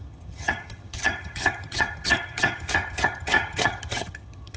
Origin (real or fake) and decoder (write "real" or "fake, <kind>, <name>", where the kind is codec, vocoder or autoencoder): fake, vocoder, HiFi-GAN